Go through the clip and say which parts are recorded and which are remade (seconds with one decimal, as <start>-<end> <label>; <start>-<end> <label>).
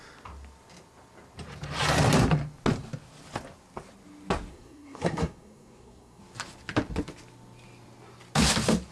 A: 0.0-4.5 recorded; 4.5-6.2 remade; 6.2-8.9 recorded